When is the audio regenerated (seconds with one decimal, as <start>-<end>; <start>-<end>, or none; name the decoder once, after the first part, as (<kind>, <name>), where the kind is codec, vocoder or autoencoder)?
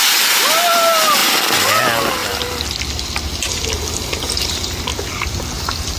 4.9-6.0 (vocoder, BigVGAN v2)